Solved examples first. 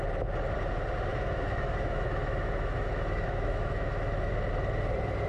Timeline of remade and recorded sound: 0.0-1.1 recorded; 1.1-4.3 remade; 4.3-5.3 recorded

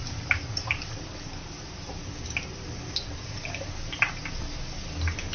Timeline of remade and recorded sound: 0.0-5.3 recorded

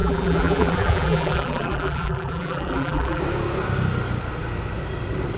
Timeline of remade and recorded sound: 0.0-3.2 remade; 3.2-5.4 recorded

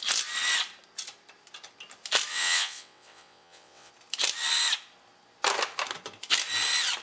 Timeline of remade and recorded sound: 0.0-2.3 recorded; 2.3-3.9 remade; 3.9-7.0 recorded

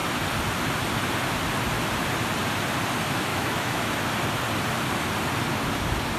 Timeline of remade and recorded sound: 0.0-3.3 recorded; 3.3-4.1 remade; 4.1-6.2 recorded

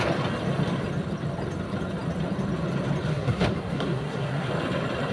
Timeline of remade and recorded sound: 0.0-3.1 recorded; 3.1-4.5 remade; 4.5-5.1 recorded

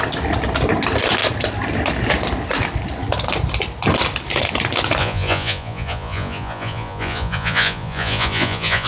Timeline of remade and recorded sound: 0.0-5.0 recorded; 5.0-8.9 remade

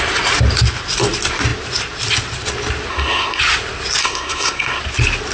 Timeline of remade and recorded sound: 0.0-2.9 recorded; 2.9-3.4 remade; 3.4-4.0 recorded; 4.0-4.8 remade; 4.8-5.3 recorded